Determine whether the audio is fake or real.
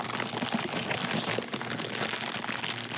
real